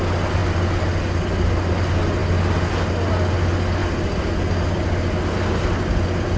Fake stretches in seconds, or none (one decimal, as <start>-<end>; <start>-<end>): none